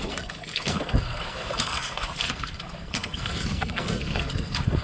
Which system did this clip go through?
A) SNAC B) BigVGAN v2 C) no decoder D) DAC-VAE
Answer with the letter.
A